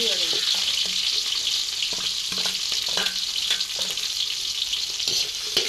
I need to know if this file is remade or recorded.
recorded